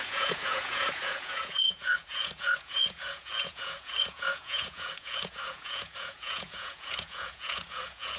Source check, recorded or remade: remade